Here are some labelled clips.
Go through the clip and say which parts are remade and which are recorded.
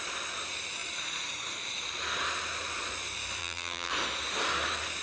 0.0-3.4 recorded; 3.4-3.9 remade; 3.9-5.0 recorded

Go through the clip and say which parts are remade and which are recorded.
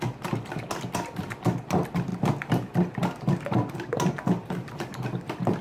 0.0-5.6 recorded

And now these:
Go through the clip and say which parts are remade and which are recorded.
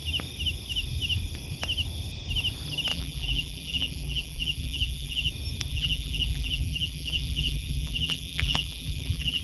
0.0-2.9 recorded; 2.9-5.3 remade; 5.3-5.7 recorded; 5.7-9.4 remade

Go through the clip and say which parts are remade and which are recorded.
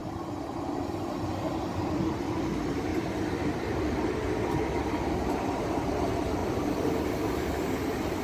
0.0-2.5 recorded; 2.5-2.9 remade; 2.9-4.9 recorded; 4.9-6.4 remade; 6.4-8.2 recorded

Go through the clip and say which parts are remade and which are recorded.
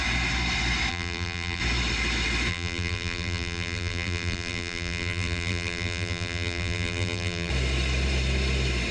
0.0-0.9 recorded; 0.9-1.6 remade; 1.6-2.5 recorded; 2.5-7.5 remade; 7.5-8.9 recorded